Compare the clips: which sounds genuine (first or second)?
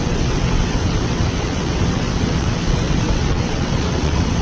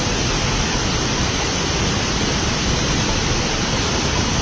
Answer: second